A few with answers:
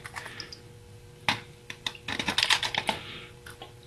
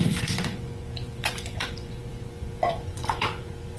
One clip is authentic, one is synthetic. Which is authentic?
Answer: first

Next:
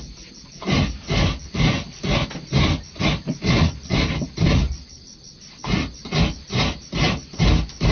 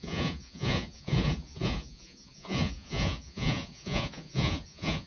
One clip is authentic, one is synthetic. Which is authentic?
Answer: first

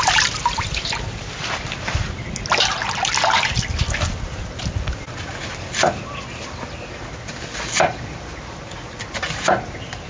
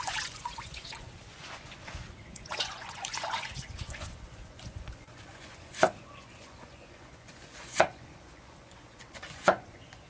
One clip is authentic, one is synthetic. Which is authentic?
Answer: first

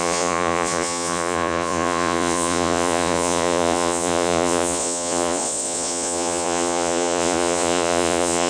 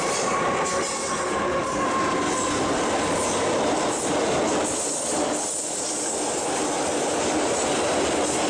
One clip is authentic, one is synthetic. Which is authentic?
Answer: second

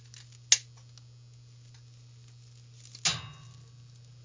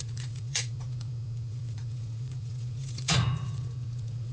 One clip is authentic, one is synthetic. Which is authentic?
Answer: first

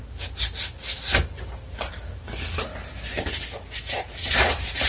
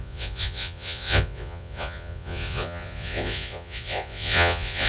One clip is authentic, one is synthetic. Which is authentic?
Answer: first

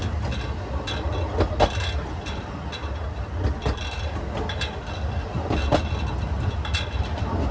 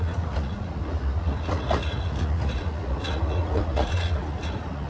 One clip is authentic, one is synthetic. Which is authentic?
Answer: first